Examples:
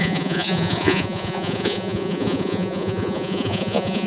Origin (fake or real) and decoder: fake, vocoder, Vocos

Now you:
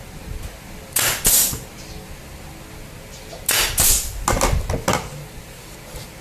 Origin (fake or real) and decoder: real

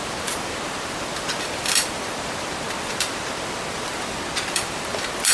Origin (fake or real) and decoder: fake, vocoder, BigVGAN v2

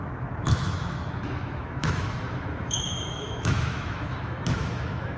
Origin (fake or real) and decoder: fake, autoencoder, DAC-VAE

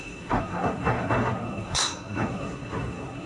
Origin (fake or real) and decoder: fake, codec, SNAC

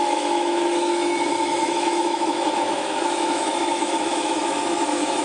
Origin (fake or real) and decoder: fake, autoencoder, DAC-VAE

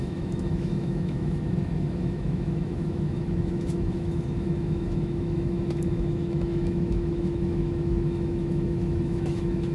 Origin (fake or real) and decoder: fake, autoencoder, DAC-VAE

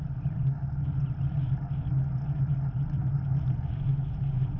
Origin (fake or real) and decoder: real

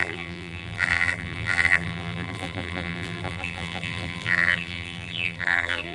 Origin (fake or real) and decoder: fake, vocoder, BigVGAN v2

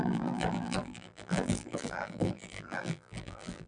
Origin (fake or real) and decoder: fake, vocoder, BigVGAN v2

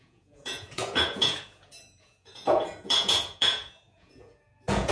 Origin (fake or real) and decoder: fake, vocoder, Vocos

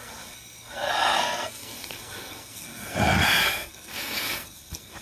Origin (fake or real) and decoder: fake, codec, SNAC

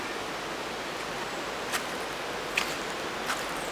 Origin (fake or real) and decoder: real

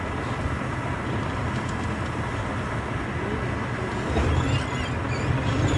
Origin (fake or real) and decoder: real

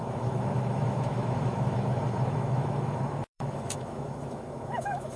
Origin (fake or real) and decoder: fake, autoencoder, DAC-VAE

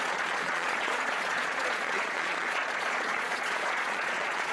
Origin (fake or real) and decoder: fake, vocoder, Vocos